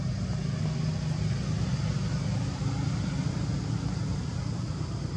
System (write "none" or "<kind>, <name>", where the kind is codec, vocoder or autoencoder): none